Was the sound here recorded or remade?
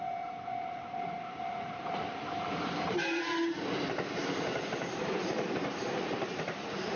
remade